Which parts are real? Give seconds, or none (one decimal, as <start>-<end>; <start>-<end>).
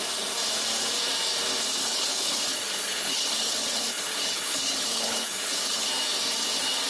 0.0-1.8; 5.9-6.9